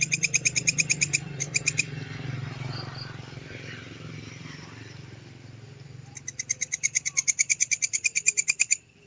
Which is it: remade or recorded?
remade